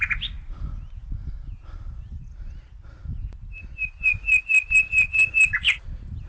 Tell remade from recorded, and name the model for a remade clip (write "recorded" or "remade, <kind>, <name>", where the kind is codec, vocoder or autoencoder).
recorded